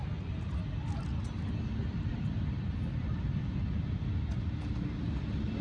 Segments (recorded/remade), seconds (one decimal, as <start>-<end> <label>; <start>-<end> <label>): 0.0-5.6 recorded